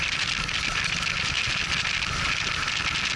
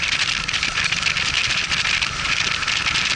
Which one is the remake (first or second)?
second